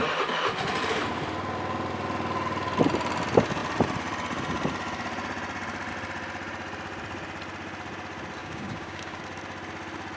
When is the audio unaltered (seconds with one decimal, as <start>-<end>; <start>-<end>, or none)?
0.0-8.4; 9.2-10.2